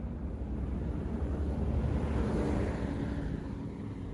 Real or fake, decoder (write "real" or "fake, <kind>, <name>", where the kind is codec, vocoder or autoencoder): real